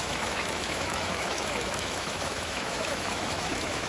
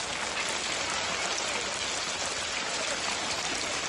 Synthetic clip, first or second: first